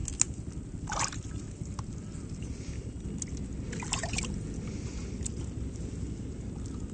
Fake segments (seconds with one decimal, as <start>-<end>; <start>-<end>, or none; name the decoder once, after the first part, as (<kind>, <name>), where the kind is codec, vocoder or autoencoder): none